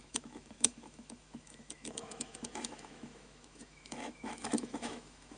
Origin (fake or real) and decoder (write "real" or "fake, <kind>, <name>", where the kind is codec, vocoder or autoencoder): fake, autoencoder, DAC-VAE